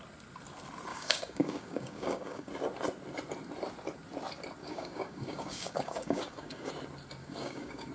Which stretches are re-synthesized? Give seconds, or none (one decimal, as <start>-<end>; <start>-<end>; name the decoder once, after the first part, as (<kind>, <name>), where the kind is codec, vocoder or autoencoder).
0.9-2.5 (codec, DAC); 4.6-6.7; 7.2-7.9

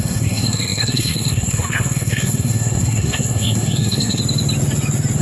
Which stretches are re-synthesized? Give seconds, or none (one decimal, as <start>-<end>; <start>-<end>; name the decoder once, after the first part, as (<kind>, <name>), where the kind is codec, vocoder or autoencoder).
0.0-4.2 (codec, SNAC)

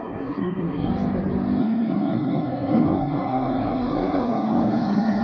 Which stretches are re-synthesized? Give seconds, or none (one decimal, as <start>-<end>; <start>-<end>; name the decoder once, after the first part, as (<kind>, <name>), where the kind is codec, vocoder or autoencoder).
0.0-0.9 (codec, SNAC); 1.6-5.2